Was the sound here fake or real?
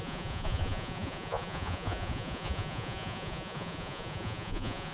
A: fake